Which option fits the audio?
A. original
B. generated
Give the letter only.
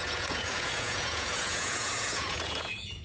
B